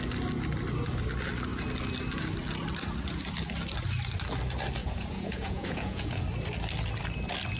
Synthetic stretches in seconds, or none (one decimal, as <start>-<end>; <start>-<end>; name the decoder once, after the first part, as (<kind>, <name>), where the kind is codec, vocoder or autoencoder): 4.8-6.2 (vocoder, Vocos)